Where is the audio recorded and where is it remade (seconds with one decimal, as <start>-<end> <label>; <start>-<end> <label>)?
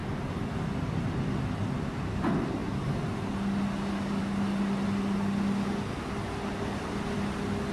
0.0-7.7 recorded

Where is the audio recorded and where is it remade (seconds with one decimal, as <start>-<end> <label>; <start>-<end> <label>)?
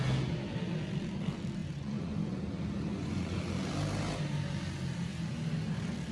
0.0-1.6 recorded; 1.6-2.4 remade; 2.4-2.9 recorded; 2.9-3.4 remade; 3.4-6.1 recorded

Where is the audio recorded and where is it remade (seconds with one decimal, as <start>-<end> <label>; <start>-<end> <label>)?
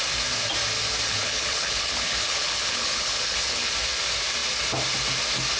0.0-1.1 recorded; 1.1-3.7 remade; 3.7-5.6 recorded